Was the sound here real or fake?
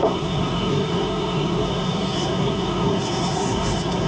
fake